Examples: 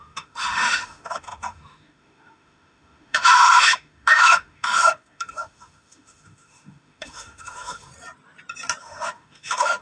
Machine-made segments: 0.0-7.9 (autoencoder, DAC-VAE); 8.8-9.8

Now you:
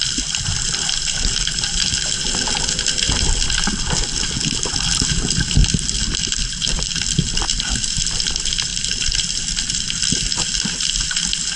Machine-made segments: 0.0-2.4 (vocoder, BigVGAN v2); 5.6-7.6; 8.7-10.0

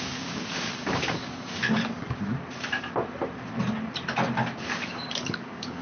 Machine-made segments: 0.0-1.6 (codec, DAC); 4.6-5.8

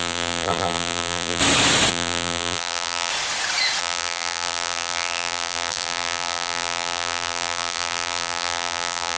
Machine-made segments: 0.0-1.4 (vocoder, BigVGAN v2); 1.9-3.1; 3.8-9.2

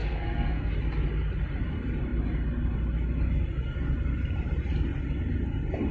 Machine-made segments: 0.0-0.7 (codec, SNAC)

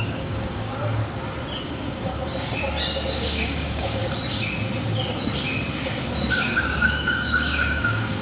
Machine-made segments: 0.0-1.0 (codec, DAC); 1.6-2.1; 3.1-4.0; 6.3-8.2

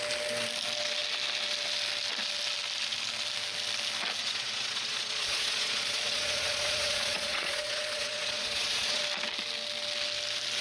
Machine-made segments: 4.2-9.0 (vocoder, Vocos)

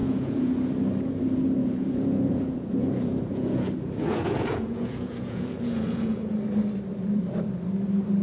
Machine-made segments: 0.0-0.7 (vocoder, Vocos); 1.6-6.3